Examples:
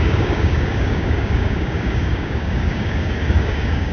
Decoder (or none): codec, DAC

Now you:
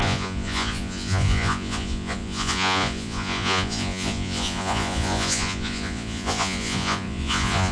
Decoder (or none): vocoder, Vocos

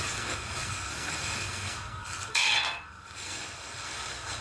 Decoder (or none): codec, SNAC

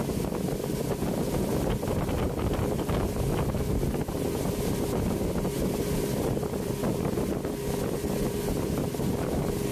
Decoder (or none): none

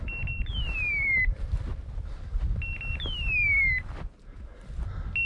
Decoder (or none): none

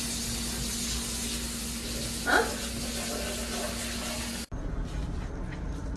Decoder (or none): none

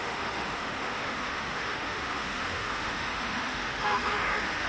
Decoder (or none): autoencoder, DAC-VAE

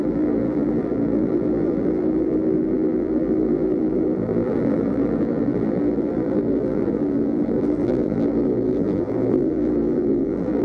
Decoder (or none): vocoder, BigVGAN v2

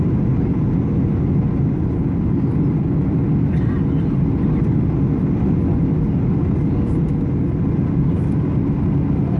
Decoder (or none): none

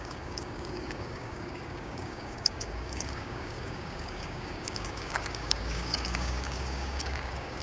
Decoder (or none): codec, DAC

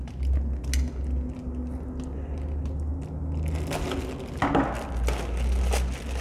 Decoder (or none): none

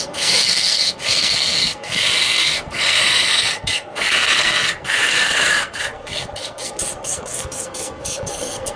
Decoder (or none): codec, SNAC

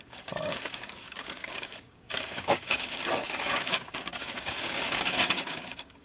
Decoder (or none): codec, DAC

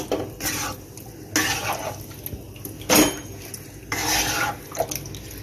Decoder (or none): none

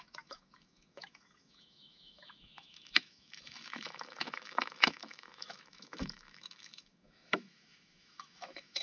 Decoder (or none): autoencoder, DAC-VAE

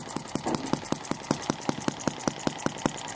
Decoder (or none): none